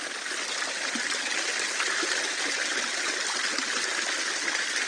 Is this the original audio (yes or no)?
yes